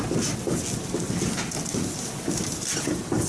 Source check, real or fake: real